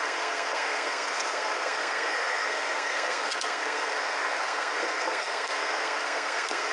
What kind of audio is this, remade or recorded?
remade